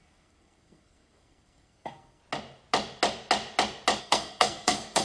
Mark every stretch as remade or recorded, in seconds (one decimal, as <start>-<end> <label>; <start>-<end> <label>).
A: 0.0-2.2 remade; 2.2-4.0 recorded; 4.0-5.0 remade